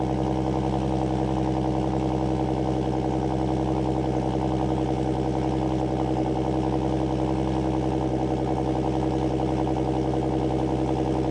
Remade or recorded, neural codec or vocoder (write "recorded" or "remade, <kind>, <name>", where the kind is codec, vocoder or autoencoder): recorded